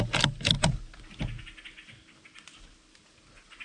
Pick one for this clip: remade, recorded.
recorded